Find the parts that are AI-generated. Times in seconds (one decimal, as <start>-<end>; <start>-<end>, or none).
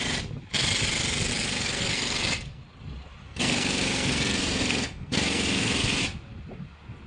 1.3-2.6; 3.2-6.0